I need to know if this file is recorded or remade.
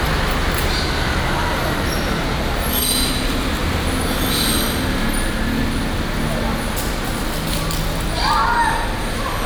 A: recorded